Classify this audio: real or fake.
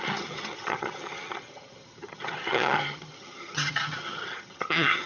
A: fake